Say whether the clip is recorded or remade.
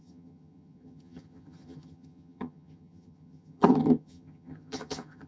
remade